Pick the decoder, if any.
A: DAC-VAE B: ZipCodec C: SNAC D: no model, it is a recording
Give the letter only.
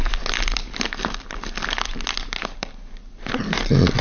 D